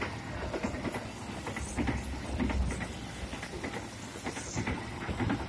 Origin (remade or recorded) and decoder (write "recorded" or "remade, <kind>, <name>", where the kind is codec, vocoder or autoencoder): recorded